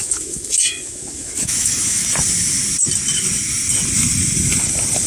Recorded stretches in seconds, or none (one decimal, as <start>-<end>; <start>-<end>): 2.0-5.1